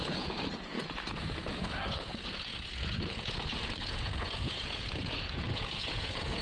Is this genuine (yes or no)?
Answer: no